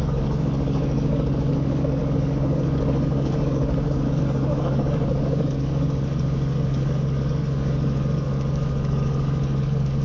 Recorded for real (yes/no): no